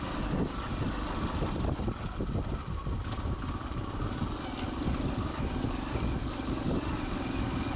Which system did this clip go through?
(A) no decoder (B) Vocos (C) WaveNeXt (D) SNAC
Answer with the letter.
A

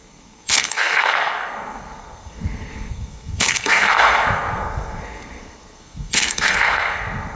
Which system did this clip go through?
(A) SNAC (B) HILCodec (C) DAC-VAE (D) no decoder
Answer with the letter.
A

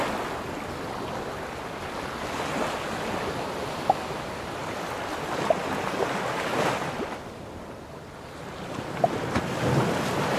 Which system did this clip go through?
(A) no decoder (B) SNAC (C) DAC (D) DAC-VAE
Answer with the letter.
A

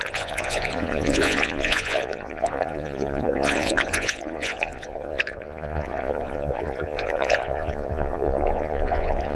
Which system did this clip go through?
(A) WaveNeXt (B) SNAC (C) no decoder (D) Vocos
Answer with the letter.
D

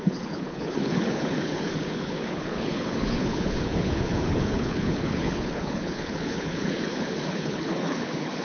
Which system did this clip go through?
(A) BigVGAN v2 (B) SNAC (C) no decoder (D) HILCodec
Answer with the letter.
D